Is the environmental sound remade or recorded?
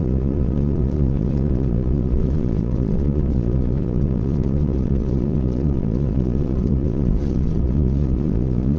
remade